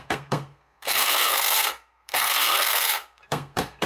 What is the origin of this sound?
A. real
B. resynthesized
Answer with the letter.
B